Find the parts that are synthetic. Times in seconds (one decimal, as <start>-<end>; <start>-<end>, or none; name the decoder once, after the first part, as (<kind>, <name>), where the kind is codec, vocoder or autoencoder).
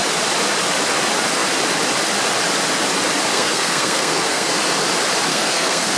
3.3-4.5 (codec, SNAC); 5.3-6.0